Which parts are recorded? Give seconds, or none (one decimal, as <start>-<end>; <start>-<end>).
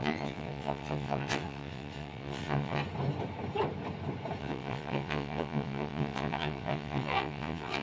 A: 2.8-4.4